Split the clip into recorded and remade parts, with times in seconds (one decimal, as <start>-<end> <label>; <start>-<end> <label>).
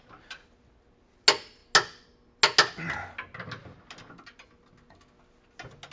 0.0-5.9 recorded